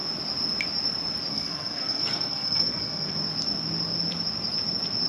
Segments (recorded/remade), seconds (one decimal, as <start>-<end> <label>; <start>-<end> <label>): 0.0-1.3 recorded; 1.3-3.1 remade; 3.1-5.1 recorded